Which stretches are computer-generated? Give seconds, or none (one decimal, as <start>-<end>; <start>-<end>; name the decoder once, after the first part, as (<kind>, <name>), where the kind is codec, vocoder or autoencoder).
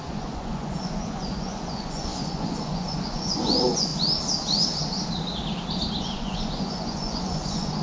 0.0-3.9 (vocoder, Vocos); 6.0-7.8